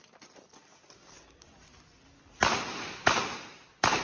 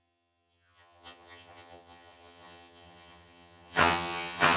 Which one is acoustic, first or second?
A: first